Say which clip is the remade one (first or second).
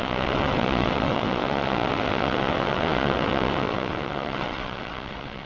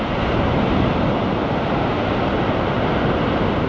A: first